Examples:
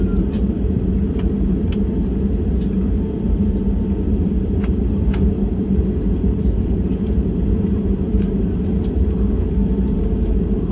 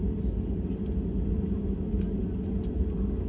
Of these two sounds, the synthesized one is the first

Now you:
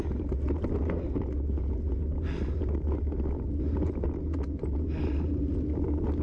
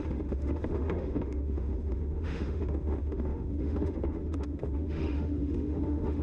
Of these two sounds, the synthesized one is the second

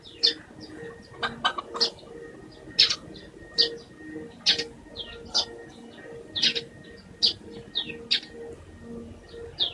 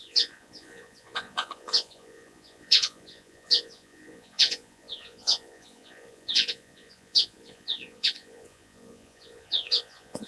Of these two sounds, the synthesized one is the second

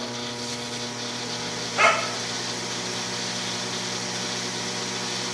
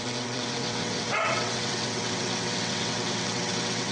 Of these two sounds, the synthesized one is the second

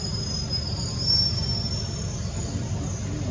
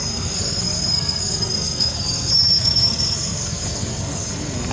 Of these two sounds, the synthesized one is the second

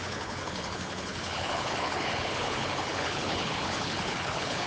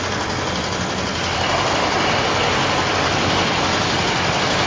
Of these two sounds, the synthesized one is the first